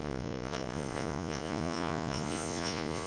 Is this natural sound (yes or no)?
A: no